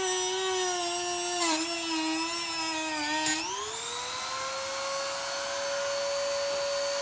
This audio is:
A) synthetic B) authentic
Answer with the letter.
B